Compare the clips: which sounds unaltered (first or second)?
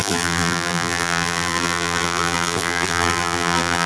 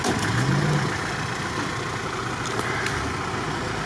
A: second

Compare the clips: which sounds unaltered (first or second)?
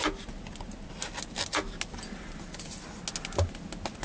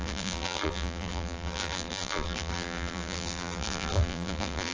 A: first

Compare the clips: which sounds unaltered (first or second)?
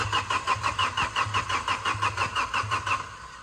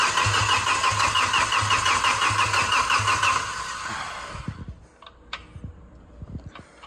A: second